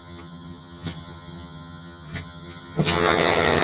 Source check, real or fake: fake